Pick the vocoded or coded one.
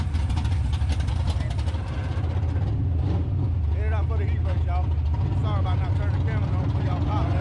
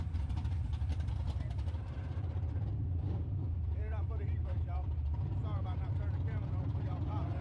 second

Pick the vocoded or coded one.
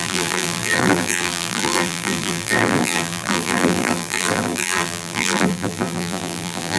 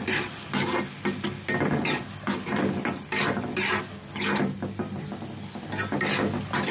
first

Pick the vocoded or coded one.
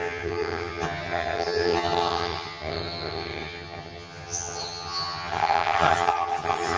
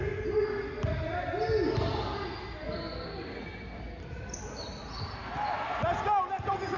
first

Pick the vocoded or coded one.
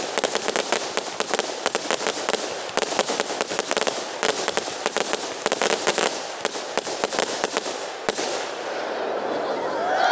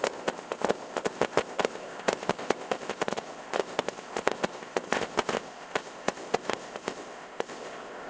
second